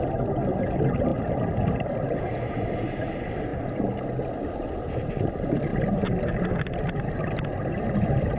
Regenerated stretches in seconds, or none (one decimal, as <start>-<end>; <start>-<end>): none